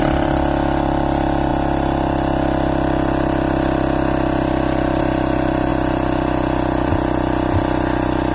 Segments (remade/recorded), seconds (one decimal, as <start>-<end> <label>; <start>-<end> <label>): 0.0-8.3 recorded